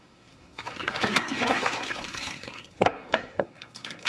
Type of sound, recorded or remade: remade